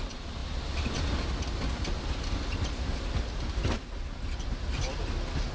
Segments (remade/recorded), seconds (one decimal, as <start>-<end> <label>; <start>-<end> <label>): 0.0-5.5 recorded